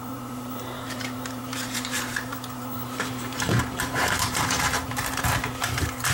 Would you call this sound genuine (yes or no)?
no